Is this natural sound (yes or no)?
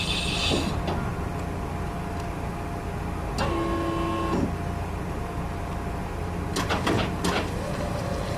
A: yes